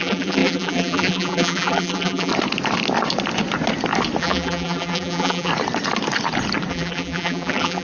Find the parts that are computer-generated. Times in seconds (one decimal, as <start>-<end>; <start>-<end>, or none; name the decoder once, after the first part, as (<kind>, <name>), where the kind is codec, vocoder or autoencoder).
0.0-2.3 (vocoder, BigVGAN v2); 4.2-5.5; 6.7-7.8